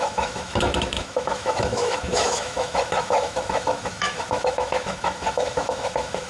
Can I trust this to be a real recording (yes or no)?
no